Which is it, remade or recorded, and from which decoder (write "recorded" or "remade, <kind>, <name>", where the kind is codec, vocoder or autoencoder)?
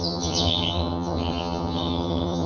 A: remade, vocoder, HiFi-GAN